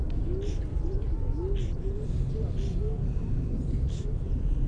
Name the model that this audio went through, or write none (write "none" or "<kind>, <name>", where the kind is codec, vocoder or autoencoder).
none